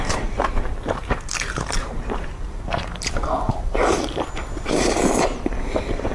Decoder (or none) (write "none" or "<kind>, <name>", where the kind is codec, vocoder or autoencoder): vocoder, BigVGAN v2